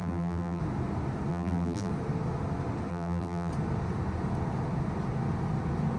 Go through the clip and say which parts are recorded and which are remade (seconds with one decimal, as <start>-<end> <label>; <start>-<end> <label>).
0.0-0.6 remade; 0.6-1.3 recorded; 1.3-1.9 remade; 1.9-2.9 recorded; 2.9-3.5 remade; 3.5-6.0 recorded